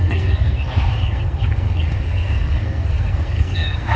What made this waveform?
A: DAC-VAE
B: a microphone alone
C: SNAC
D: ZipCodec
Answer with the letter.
C